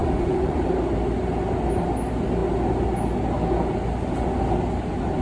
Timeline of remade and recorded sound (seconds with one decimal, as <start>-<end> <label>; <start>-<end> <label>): 0.0-0.6 remade; 0.6-5.2 recorded

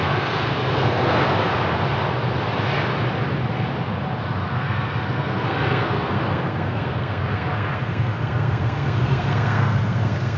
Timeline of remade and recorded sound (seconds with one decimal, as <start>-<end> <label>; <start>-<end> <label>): 0.0-1.5 remade; 1.5-4.5 recorded; 4.5-10.4 remade

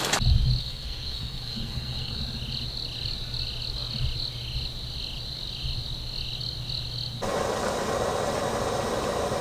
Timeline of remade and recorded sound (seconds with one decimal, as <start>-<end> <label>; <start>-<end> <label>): 0.0-0.6 recorded; 0.6-2.2 remade; 2.2-9.4 recorded

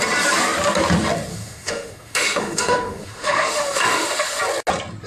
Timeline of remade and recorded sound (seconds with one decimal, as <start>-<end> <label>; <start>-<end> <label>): 0.0-1.3 recorded; 1.3-4.4 remade; 4.4-5.1 recorded